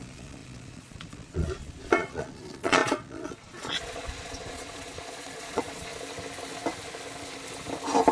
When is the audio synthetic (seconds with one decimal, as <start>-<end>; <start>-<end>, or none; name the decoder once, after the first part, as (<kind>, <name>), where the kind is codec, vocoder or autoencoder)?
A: 0.0-5.9 (vocoder, Vocos)